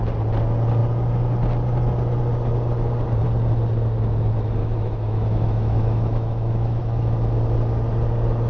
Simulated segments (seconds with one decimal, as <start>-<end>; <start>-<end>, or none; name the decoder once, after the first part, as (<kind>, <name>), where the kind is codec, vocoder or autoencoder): 4.6-6.8 (autoencoder, DAC-VAE)